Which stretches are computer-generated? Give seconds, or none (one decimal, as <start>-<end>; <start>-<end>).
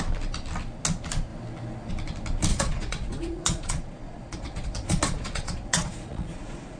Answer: 2.5-6.8